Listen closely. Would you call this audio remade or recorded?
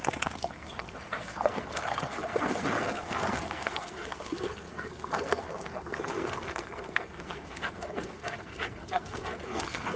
remade